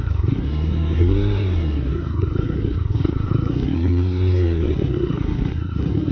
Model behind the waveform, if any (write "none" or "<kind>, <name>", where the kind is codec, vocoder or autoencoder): codec, SNAC